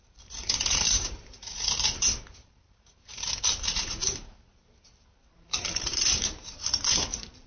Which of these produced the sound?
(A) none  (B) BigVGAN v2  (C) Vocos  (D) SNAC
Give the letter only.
B